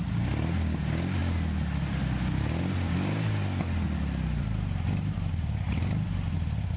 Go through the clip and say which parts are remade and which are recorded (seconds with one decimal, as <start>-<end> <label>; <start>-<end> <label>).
0.0-6.8 recorded